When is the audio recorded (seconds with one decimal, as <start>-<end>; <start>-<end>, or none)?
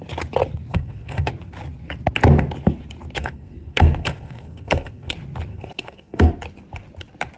0.0-0.7; 1.3-3.2; 5.1-5.5; 6.3-7.4